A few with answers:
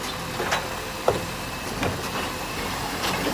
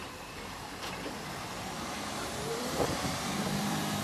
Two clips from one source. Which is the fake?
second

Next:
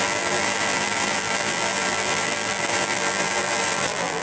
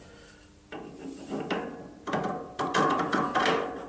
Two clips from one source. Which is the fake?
first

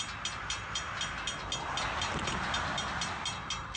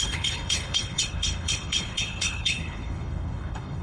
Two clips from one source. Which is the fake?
second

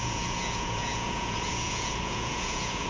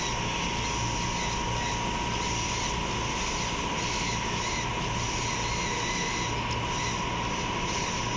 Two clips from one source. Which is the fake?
first